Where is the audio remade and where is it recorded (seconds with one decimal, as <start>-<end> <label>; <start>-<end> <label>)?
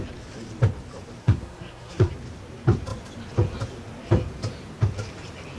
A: 0.0-1.2 recorded; 1.2-2.1 remade; 2.1-5.6 recorded